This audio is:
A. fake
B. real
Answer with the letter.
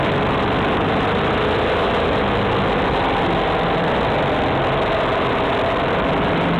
B